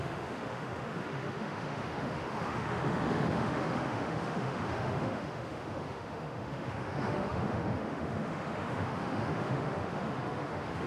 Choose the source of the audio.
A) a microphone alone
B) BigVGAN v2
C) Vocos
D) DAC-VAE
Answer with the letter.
D